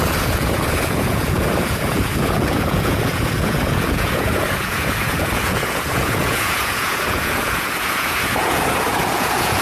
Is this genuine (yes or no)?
no